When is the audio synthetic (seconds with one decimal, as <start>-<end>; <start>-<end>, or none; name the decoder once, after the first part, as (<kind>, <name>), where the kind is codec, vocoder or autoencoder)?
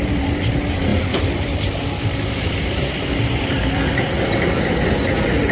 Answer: 0.9-4.2 (vocoder, BigVGAN v2)